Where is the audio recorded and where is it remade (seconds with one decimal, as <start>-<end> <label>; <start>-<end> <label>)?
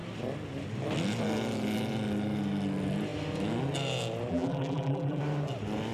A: 0.0-4.3 recorded; 4.3-5.2 remade; 5.2-5.9 recorded